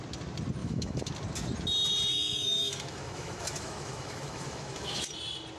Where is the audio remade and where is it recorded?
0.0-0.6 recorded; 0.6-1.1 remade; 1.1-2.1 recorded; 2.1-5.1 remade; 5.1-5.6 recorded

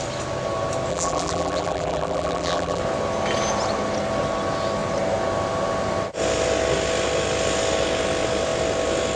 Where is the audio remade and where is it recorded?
0.0-0.9 recorded; 0.9-2.8 remade; 2.8-9.2 recorded

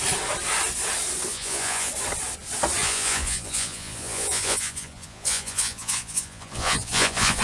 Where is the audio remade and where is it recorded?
0.0-1.3 recorded; 1.3-1.9 remade; 1.9-2.8 recorded; 2.8-7.4 remade

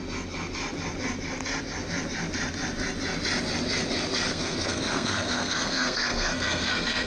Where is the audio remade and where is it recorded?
0.0-4.3 recorded; 4.3-7.1 remade

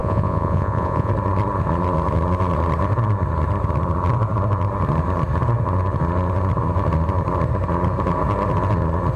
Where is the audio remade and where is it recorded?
0.0-1.1 remade; 1.1-9.2 recorded

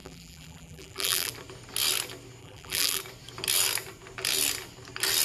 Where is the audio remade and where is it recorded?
0.0-1.3 remade; 1.3-2.4 recorded; 2.4-3.0 remade; 3.0-5.2 recorded

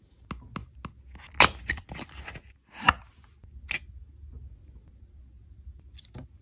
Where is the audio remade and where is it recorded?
0.0-6.4 recorded

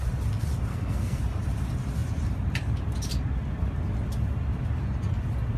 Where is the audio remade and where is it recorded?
0.0-0.7 recorded; 0.7-1.2 remade; 1.2-5.6 recorded